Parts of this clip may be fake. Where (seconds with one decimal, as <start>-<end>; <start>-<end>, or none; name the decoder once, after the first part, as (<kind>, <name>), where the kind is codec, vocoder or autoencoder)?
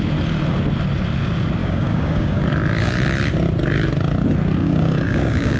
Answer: 1.6-2.4 (codec, DAC); 4.6-5.6